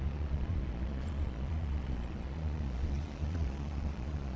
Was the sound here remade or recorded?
remade